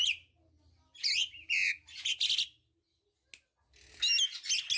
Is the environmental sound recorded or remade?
recorded